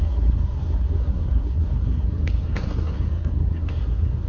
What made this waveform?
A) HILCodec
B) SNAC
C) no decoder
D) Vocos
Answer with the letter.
B